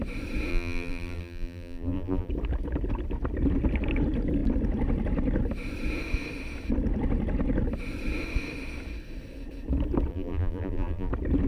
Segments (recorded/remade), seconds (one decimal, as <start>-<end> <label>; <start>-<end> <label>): 0.0-0.5 recorded; 0.5-2.3 remade; 2.3-10.1 recorded; 10.1-11.1 remade; 11.1-11.5 recorded